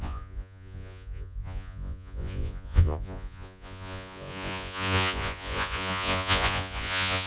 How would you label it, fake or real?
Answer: fake